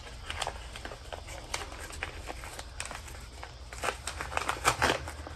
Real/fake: real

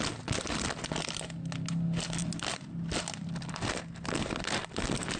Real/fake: real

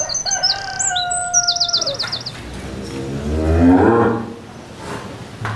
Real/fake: real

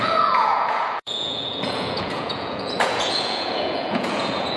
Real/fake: fake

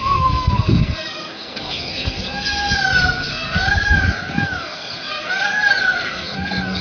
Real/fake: fake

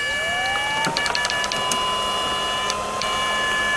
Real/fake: real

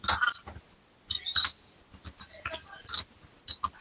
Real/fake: real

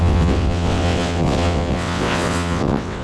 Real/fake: fake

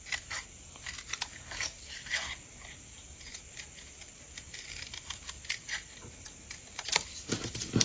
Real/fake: real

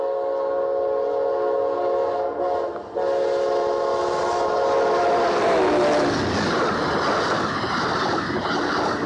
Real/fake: real